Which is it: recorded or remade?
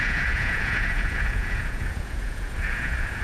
remade